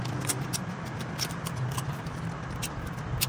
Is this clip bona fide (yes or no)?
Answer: no